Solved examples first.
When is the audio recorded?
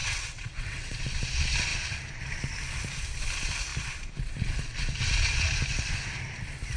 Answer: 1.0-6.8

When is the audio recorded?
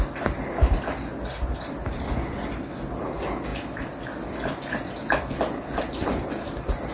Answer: 0.0-6.9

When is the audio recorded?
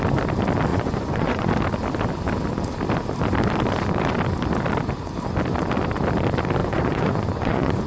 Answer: 0.0-0.7; 1.5-6.6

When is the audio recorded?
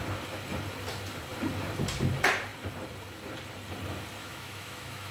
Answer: 0.0-4.2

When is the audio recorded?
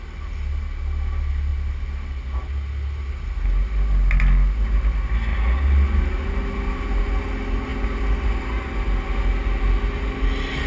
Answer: 0.0-10.7